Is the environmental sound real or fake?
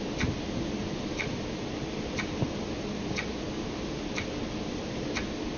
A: real